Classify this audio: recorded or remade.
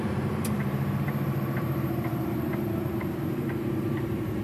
remade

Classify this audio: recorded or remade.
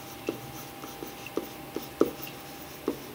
recorded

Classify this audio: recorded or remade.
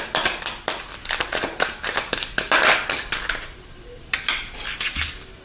remade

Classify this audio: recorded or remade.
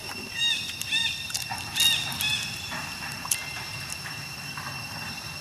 recorded